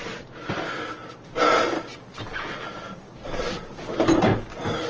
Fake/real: real